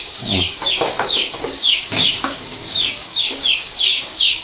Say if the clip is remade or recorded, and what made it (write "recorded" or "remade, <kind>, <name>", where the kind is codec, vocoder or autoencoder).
remade, codec, DAC